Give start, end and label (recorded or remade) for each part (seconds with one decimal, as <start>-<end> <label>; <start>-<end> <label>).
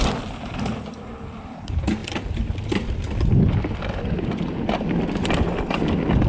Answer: 0.0-6.3 remade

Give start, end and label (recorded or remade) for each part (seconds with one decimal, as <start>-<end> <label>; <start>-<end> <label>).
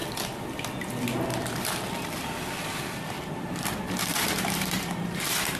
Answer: 0.0-4.1 recorded; 4.1-5.6 remade